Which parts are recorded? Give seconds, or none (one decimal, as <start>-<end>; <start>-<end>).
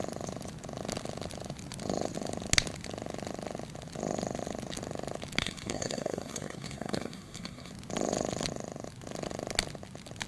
0.0-5.4; 7.7-10.3